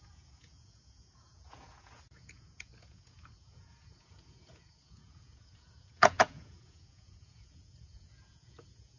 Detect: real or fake fake